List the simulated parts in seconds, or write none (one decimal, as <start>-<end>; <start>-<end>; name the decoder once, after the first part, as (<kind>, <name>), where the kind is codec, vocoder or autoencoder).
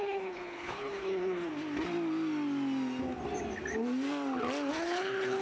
0.0-1.5 (codec, HILCodec); 4.7-5.4